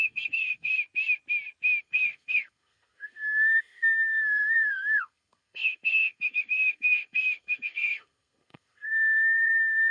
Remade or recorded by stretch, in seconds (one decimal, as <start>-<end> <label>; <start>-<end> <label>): 0.0-0.7 remade; 0.7-1.8 recorded; 1.8-9.9 remade